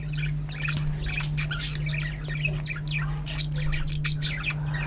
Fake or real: real